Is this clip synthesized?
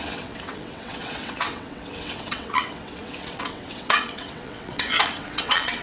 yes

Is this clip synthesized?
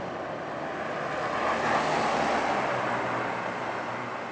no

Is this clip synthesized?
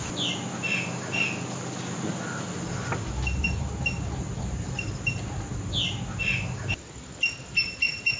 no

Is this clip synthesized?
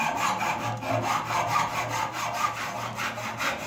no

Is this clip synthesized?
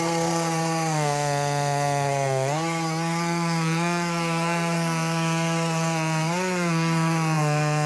yes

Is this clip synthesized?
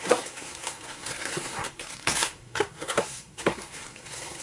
yes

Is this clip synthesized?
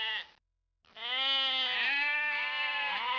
no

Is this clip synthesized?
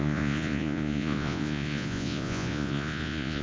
yes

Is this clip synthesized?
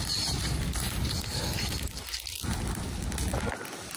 no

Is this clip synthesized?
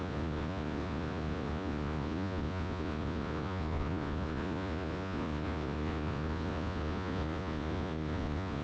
yes